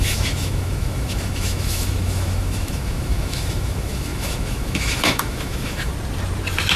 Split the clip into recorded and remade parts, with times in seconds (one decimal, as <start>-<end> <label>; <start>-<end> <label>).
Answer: 0.0-5.9 remade; 5.9-6.8 recorded